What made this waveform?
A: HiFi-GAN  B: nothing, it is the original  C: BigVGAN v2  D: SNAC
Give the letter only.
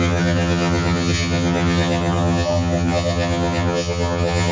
A